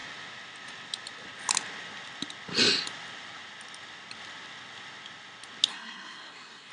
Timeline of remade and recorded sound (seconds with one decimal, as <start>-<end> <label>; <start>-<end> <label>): 0.0-5.7 recorded; 5.7-6.7 remade